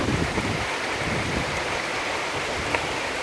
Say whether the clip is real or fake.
real